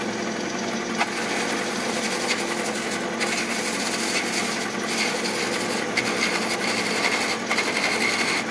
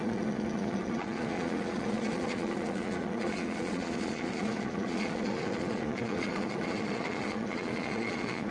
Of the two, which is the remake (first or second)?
second